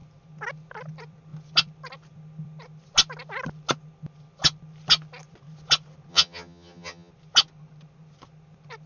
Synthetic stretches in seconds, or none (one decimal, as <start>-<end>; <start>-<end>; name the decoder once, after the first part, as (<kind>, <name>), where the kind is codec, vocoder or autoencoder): 6.1-7.1 (vocoder, HiFi-GAN)